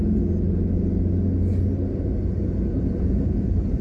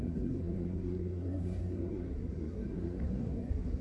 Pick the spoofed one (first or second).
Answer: second